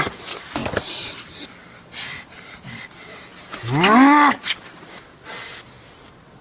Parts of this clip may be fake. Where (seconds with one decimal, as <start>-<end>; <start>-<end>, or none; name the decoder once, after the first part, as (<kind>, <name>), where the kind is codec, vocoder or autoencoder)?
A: none